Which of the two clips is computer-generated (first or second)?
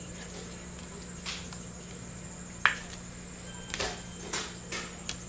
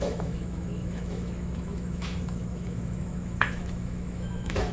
second